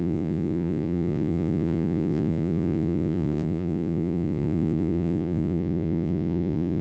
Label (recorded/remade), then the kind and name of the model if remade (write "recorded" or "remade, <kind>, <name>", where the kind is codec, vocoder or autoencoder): remade, vocoder, Vocos